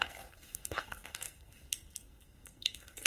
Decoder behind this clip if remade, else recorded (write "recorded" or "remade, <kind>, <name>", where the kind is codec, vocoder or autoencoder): remade, codec, SNAC